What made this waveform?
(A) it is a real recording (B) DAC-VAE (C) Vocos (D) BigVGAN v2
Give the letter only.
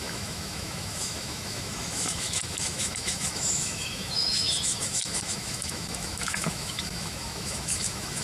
B